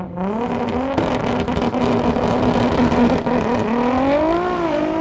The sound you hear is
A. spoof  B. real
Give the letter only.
B